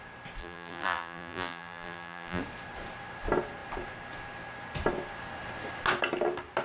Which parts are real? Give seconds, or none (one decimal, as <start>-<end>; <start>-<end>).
0.0-0.4; 2.4-6.6